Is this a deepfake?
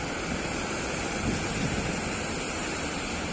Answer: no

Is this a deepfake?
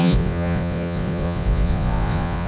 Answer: yes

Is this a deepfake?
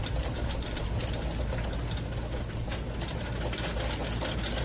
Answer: no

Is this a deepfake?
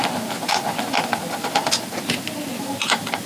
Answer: no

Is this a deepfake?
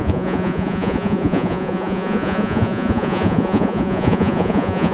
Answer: yes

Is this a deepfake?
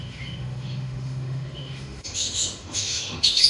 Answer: yes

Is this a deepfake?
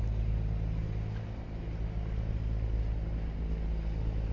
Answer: no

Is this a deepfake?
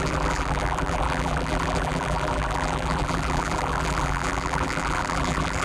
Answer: yes